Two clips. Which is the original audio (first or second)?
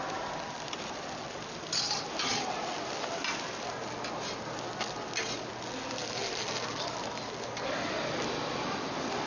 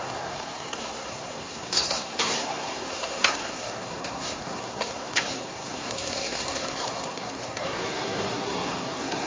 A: first